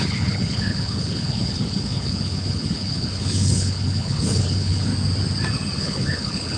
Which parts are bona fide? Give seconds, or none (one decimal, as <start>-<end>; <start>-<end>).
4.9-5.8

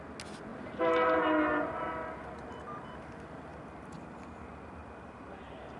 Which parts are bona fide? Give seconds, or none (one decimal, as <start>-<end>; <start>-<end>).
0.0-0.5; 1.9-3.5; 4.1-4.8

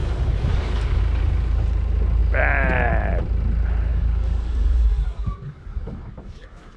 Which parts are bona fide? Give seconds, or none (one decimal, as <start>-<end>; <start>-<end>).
1.0-3.9

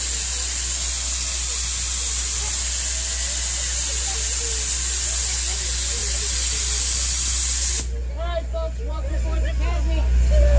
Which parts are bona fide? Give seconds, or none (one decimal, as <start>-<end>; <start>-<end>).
0.0-6.0; 9.1-10.6